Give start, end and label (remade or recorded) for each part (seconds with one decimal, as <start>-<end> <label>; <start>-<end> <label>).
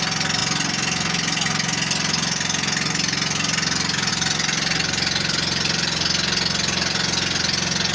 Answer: 0.0-7.9 recorded